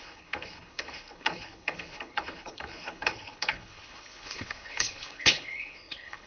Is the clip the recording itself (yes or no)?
no